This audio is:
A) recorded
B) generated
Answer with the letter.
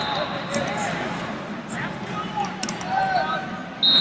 A